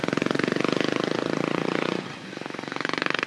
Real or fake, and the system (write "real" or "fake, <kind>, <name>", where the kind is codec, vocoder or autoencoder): fake, vocoder, Vocos